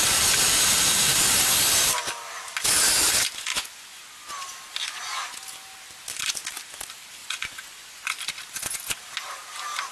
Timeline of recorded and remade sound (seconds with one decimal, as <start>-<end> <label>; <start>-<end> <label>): 0.0-3.5 recorded; 3.5-4.3 remade; 4.3-4.8 recorded; 4.8-5.3 remade; 5.3-7.2 recorded; 7.2-8.0 remade; 8.0-9.9 recorded